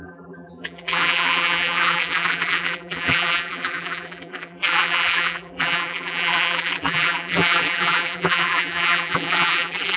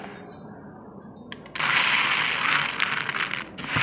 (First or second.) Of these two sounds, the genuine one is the second